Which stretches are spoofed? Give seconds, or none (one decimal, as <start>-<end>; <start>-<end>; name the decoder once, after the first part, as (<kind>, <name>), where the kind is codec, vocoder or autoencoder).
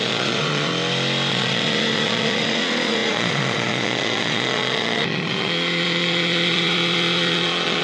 0.0-0.7 (vocoder, Vocos); 1.3-7.8